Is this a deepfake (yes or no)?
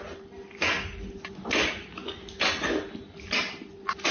no